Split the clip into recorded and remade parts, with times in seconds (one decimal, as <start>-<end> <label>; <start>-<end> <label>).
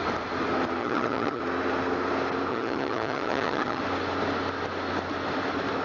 0.0-0.8 recorded; 0.8-1.4 remade; 1.4-2.5 recorded; 2.5-3.8 remade; 3.8-5.8 recorded